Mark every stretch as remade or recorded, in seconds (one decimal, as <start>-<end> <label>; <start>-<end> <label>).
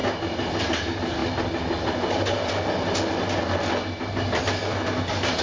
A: 0.0-5.4 recorded